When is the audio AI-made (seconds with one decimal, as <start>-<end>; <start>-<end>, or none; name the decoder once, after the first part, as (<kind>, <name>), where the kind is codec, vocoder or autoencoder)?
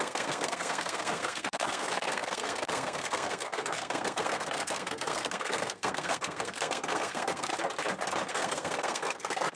0.0-7.5 (codec, SNAC); 8.3-9.6